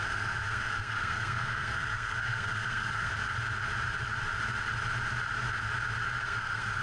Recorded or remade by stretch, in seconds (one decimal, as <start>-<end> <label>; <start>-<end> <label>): 0.0-3.1 remade; 3.1-6.2 recorded; 6.2-6.8 remade